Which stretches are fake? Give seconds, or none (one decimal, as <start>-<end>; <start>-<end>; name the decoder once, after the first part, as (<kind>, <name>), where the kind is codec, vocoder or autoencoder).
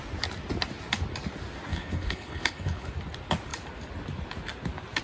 1.7-2.9 (codec, HILCodec)